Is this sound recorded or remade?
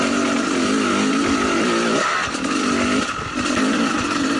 recorded